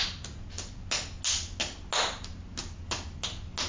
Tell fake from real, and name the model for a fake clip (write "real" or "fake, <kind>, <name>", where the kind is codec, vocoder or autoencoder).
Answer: real